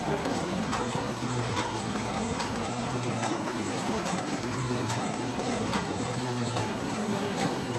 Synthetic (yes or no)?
yes